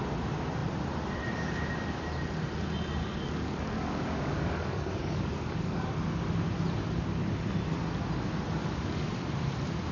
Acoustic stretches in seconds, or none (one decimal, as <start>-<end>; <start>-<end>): 0.0-3.0; 5.9-8.6; 9.1-9.9